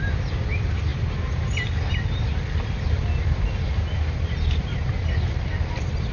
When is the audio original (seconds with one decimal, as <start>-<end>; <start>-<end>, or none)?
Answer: 0.0-6.1